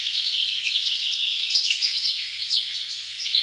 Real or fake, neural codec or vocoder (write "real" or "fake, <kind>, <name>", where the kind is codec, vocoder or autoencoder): fake, codec, SNAC